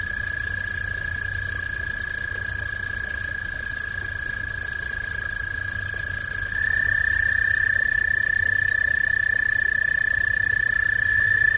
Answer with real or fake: real